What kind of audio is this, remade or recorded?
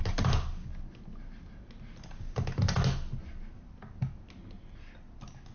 recorded